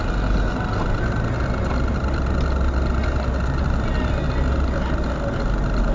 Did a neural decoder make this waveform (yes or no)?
no